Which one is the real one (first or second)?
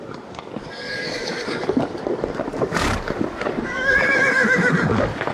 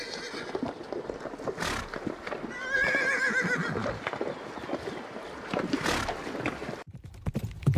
second